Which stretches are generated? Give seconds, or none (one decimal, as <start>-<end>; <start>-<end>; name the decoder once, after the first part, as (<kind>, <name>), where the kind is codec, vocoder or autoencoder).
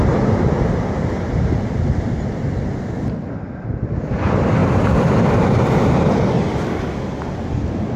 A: none